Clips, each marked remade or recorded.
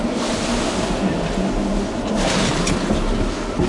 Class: recorded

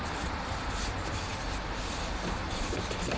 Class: recorded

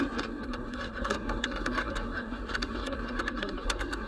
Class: remade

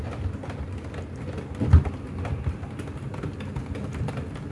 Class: recorded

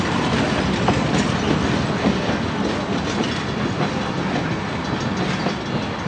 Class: recorded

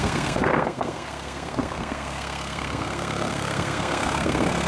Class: remade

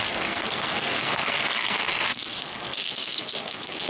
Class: remade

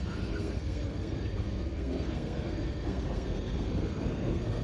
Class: remade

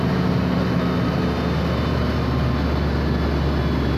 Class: recorded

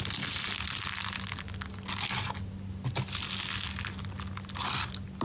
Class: recorded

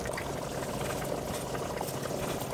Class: recorded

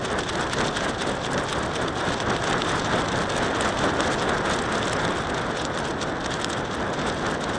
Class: recorded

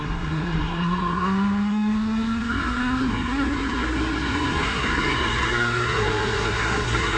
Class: remade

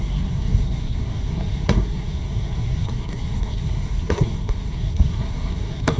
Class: remade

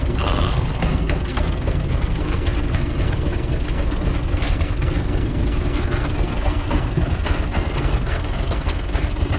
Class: remade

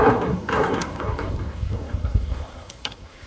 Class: remade